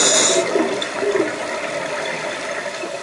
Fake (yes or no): no